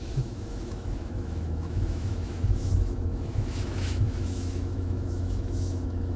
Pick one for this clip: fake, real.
fake